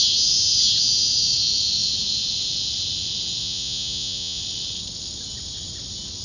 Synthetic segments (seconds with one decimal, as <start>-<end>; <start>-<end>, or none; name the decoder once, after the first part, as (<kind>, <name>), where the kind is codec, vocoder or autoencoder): 3.4-4.4 (vocoder, Vocos)